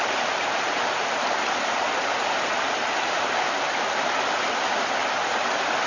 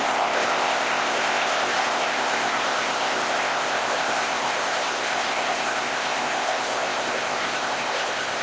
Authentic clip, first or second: first